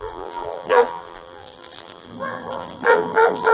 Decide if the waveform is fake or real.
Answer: fake